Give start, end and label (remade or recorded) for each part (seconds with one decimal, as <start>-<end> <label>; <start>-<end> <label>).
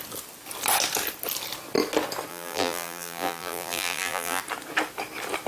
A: 0.0-2.3 recorded; 2.3-4.4 remade; 4.4-5.5 recorded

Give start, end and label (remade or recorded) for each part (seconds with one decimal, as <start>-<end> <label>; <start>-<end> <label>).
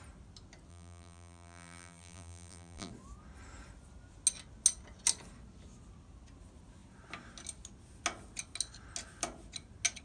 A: 0.0-0.7 recorded; 0.7-2.9 remade; 2.9-10.0 recorded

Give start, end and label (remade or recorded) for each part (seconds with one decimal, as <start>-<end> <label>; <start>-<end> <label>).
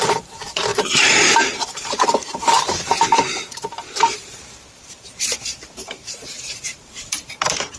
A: 0.0-7.8 remade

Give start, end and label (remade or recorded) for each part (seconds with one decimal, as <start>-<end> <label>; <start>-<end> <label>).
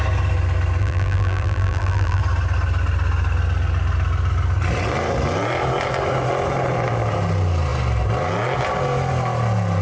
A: 0.0-0.8 recorded; 0.8-2.2 remade; 2.2-9.8 recorded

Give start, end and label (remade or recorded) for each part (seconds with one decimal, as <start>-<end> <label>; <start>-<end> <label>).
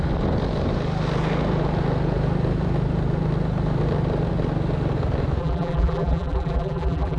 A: 0.0-5.4 recorded; 5.4-7.2 remade